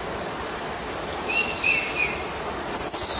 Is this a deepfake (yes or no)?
no